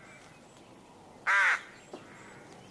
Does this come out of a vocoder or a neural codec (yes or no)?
no